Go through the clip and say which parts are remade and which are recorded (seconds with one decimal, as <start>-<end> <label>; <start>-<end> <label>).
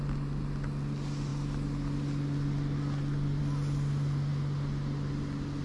0.0-5.6 recorded